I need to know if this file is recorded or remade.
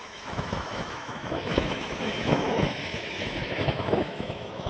remade